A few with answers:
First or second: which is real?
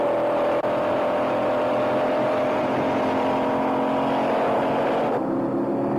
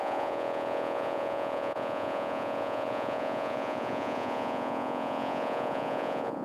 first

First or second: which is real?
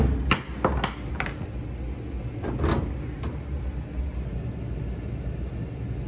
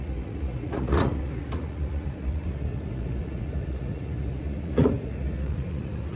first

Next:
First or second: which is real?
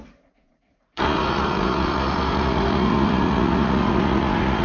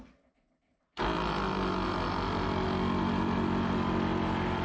second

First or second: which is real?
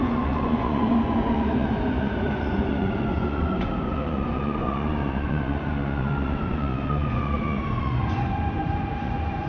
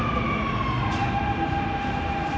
second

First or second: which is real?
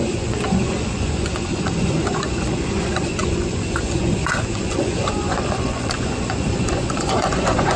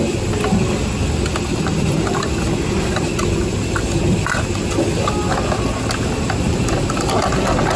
second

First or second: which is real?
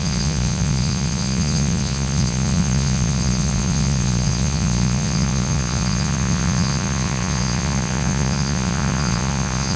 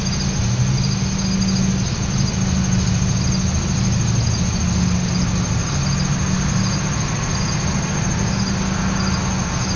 second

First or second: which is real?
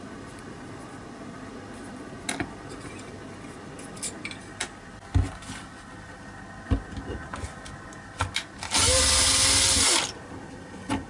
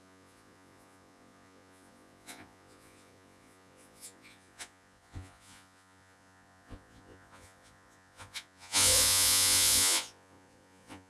first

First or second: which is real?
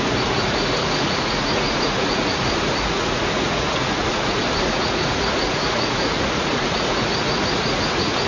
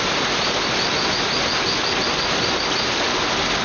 second